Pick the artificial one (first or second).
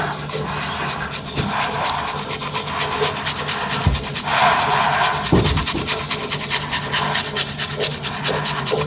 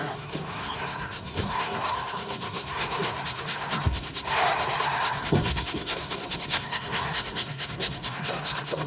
second